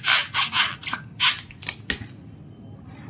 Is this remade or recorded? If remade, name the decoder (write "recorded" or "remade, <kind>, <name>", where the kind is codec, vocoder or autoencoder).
recorded